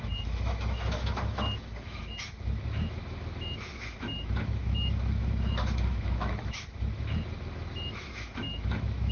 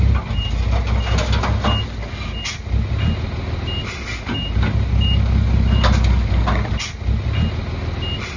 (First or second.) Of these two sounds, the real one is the second